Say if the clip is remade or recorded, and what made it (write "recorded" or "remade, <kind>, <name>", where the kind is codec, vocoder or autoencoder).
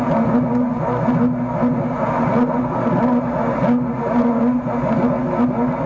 recorded